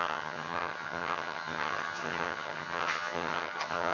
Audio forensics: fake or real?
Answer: fake